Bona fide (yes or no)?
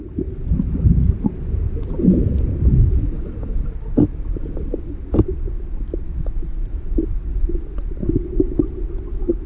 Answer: yes